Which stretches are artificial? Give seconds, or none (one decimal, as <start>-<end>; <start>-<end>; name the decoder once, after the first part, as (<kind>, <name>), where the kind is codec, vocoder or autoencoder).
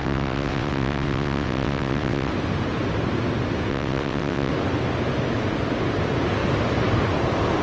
0.0-2.3 (vocoder, WaveNeXt); 3.7-4.5